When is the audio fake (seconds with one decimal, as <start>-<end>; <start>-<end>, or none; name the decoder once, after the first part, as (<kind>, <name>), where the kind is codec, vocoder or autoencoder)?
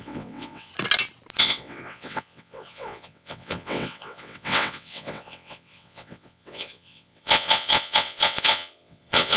0.0-0.7 (vocoder, WaveNeXt); 1.4-9.4